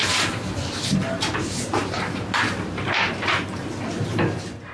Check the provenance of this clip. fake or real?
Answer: real